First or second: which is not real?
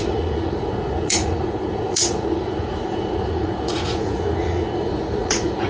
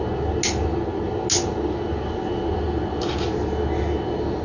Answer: first